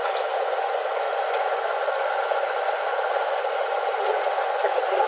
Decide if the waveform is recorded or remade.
remade